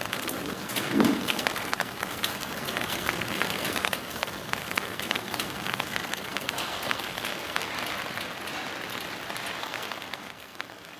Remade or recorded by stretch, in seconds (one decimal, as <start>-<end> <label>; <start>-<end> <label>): 0.0-7.7 remade; 7.7-9.6 recorded; 9.6-11.0 remade